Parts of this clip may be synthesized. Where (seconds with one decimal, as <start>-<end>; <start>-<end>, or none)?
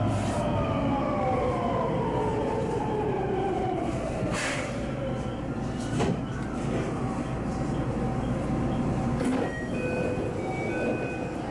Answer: 2.3-4.6